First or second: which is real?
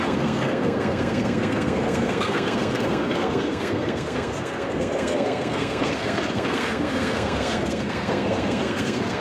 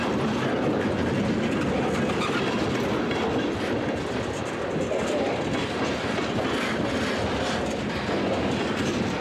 second